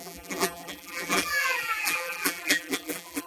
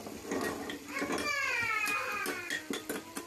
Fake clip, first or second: first